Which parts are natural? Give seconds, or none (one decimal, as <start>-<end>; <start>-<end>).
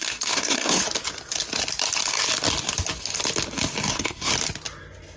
0.8-3.9; 4.3-5.2